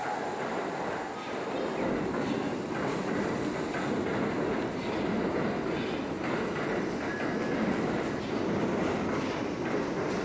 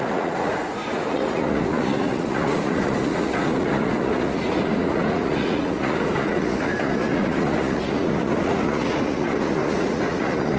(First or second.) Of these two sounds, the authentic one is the first